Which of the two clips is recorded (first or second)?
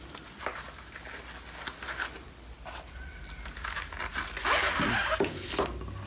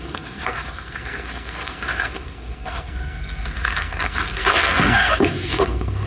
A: first